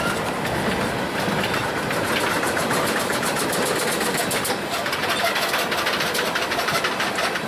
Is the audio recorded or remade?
recorded